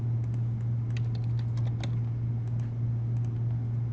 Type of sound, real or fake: real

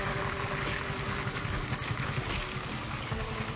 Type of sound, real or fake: fake